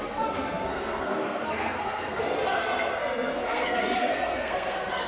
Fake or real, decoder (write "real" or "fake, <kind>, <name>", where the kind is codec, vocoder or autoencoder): fake, codec, SNAC